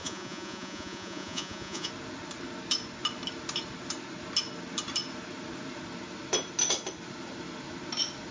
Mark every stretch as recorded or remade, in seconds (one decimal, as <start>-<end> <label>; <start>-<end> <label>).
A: 0.0-1.9 remade; 1.9-8.3 recorded